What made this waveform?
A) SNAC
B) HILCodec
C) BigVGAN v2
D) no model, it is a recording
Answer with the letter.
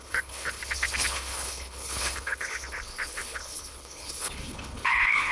B